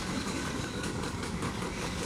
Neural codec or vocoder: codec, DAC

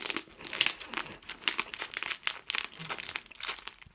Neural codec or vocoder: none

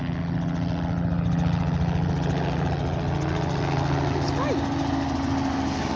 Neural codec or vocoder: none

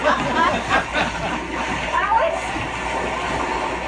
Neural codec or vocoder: none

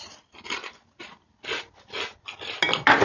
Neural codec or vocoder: none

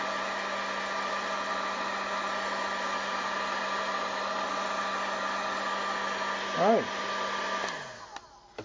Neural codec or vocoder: none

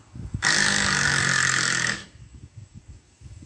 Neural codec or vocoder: codec, DAC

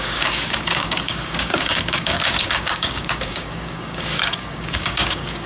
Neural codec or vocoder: codec, DAC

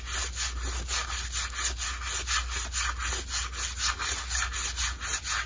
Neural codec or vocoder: none